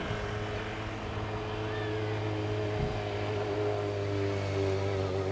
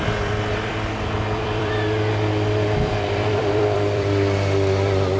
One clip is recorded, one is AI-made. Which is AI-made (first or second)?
second